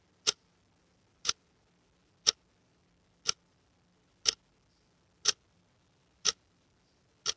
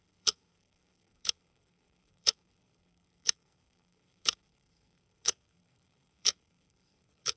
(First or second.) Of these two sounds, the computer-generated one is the second